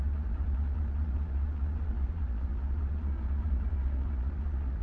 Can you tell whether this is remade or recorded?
remade